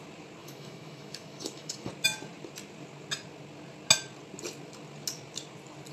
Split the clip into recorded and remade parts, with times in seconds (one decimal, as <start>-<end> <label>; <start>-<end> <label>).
0.0-0.4 recorded; 0.4-1.9 remade; 1.9-5.9 recorded